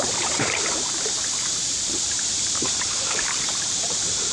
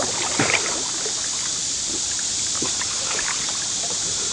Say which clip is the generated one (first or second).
first